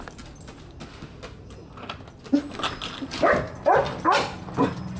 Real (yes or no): yes